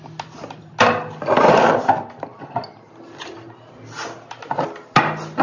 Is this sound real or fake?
real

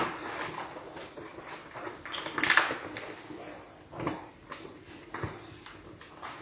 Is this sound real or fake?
real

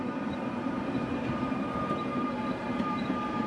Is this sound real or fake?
fake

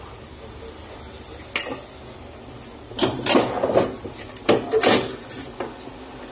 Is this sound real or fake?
real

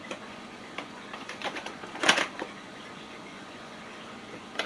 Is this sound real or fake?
fake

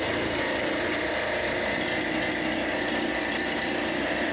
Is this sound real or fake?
real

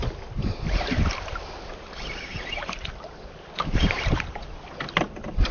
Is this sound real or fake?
real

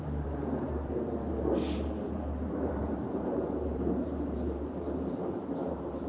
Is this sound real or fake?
fake